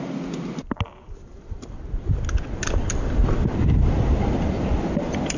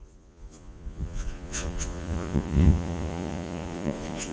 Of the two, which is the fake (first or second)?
second